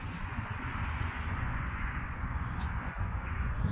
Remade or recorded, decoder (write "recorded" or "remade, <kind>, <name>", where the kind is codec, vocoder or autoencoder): remade, vocoder, Vocos